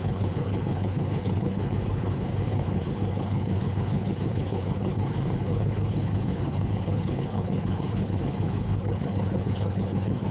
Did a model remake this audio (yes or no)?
yes